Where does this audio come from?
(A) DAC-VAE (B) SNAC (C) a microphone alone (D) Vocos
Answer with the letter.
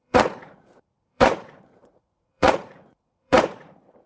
D